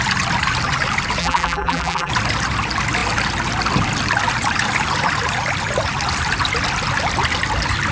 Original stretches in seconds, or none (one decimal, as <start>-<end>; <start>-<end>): 0.0-1.2; 2.1-7.9